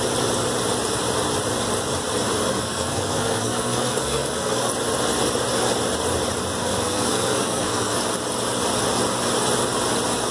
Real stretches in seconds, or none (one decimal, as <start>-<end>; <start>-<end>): 0.0-2.5; 4.7-6.6; 8.0-10.3